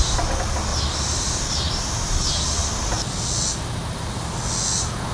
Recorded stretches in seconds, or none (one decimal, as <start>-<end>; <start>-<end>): 0.0-0.7; 2.1-5.1